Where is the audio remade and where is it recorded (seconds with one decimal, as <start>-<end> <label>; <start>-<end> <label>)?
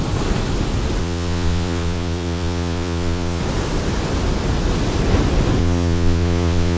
0.0-1.0 recorded; 1.0-3.4 remade; 3.4-5.6 recorded; 5.6-6.8 remade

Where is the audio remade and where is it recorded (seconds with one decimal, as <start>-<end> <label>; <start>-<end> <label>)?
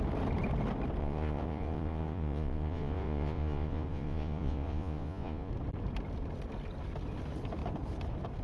0.0-1.0 recorded; 1.0-5.5 remade; 5.5-8.4 recorded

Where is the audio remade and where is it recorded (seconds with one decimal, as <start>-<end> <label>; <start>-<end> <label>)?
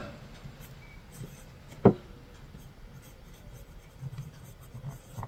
0.0-5.3 recorded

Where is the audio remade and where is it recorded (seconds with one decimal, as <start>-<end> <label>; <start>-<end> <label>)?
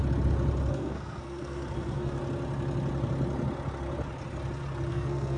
0.0-0.7 recorded; 0.7-2.2 remade; 2.2-4.9 recorded; 4.9-5.4 remade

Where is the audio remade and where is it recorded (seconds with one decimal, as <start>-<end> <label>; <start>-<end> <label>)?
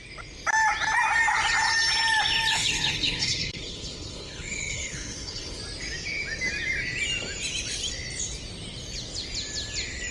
0.0-2.5 recorded; 2.5-5.6 remade; 5.6-10.1 recorded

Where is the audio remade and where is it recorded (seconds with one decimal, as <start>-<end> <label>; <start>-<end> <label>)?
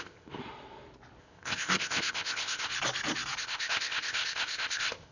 0.0-0.4 remade; 0.4-1.2 recorded; 1.2-2.7 remade; 2.7-3.4 recorded; 3.4-5.1 remade